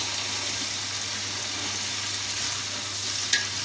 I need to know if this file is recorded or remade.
recorded